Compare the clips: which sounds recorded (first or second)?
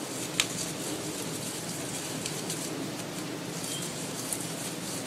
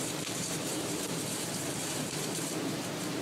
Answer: first